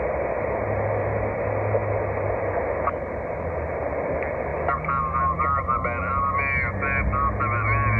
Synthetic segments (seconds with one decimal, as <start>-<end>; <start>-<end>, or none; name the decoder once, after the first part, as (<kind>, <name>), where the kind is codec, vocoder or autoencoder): none